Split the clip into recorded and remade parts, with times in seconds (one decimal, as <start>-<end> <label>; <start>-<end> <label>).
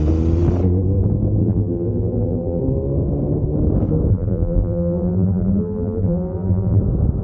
0.0-1.4 recorded; 1.4-2.6 remade; 2.6-4.1 recorded; 4.1-6.8 remade; 6.8-7.2 recorded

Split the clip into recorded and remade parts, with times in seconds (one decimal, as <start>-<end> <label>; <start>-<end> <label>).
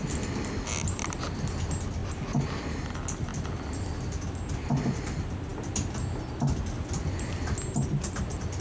0.0-8.6 recorded